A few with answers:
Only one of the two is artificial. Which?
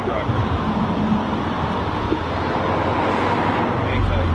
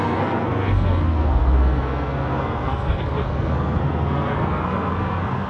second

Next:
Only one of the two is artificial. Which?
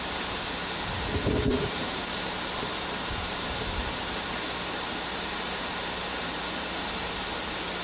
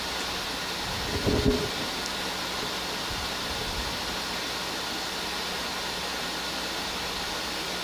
first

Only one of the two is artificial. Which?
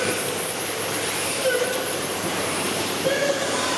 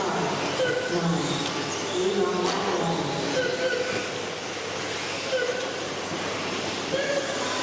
first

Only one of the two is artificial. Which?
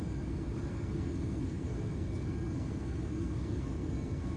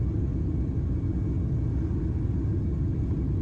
first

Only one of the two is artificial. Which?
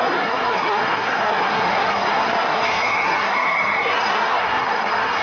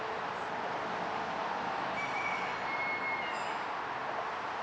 first